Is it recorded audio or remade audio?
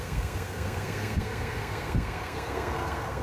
remade